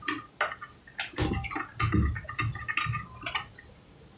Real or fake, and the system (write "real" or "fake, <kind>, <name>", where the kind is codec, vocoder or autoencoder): real